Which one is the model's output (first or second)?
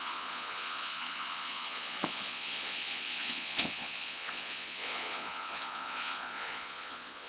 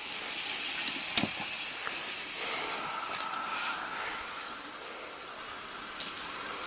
first